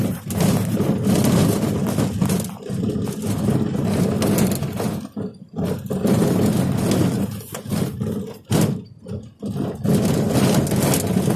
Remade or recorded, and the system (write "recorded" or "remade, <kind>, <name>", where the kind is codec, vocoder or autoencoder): recorded